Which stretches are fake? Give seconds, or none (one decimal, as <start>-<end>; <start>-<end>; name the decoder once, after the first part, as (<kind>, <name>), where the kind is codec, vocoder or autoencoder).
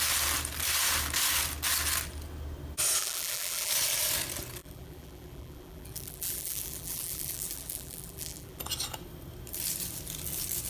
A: 3.0-3.7 (vocoder, BigVGAN v2); 4.6-8.6